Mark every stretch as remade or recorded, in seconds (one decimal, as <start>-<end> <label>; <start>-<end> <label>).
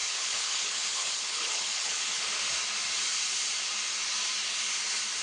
0.0-2.2 remade; 2.2-5.2 recorded